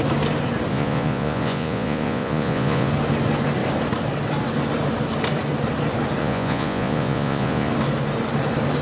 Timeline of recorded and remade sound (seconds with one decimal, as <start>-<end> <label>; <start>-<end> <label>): 0.0-0.7 recorded; 0.7-2.9 remade; 2.9-6.2 recorded; 6.2-7.7 remade; 7.7-8.8 recorded